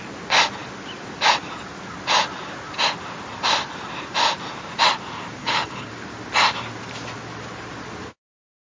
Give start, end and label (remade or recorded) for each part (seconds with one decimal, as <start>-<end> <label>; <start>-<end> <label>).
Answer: 0.0-5.4 recorded; 5.4-5.9 remade; 5.9-8.7 recorded